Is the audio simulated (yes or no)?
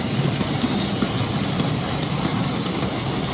no